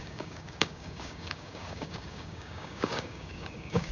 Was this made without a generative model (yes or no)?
no